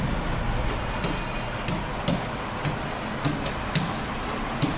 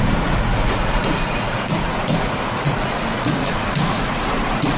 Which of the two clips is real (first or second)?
first